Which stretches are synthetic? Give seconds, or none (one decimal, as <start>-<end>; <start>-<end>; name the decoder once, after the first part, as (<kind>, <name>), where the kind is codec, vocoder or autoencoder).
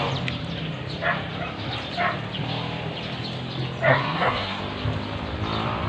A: 3.9-4.6 (codec, SNAC)